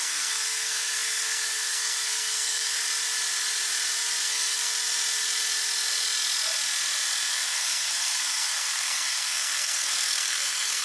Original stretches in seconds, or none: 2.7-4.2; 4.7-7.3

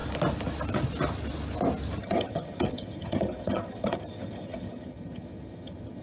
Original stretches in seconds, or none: 0.0-2.0

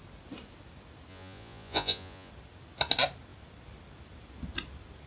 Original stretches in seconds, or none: 0.0-1.1; 2.3-5.1

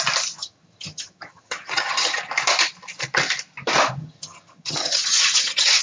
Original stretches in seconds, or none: 0.0-0.4; 2.2-4.0